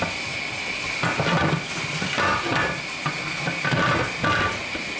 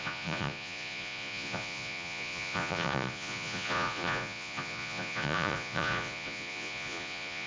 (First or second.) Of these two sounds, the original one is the first